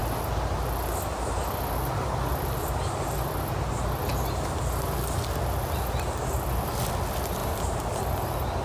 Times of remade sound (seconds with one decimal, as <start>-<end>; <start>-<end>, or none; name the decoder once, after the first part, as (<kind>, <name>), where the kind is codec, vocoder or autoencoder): 7.4-8.0 (vocoder, BigVGAN v2)